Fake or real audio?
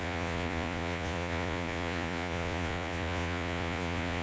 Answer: fake